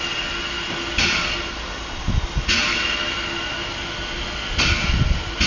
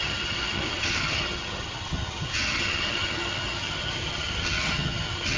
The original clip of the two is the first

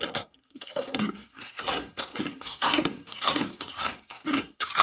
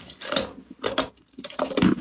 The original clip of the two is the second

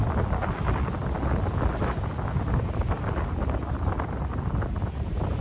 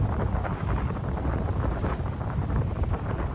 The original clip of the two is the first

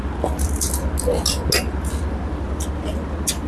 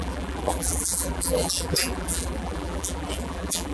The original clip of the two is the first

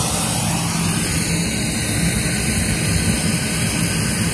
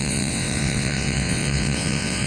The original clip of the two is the first